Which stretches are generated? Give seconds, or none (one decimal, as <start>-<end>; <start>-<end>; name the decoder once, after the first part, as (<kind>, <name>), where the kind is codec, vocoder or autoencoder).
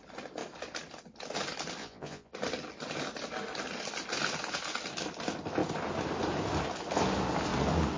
1.8-2.3 (vocoder, Vocos)